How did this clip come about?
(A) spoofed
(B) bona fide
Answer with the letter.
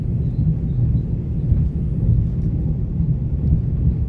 B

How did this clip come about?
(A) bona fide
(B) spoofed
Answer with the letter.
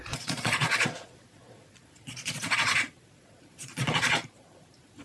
B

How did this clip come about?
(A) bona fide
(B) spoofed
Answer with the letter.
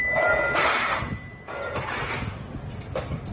A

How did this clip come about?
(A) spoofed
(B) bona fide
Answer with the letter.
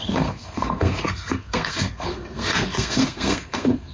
A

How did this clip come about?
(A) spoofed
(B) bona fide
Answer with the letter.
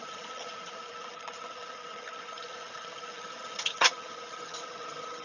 A